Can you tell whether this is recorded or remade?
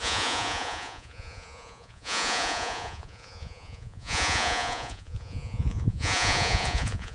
remade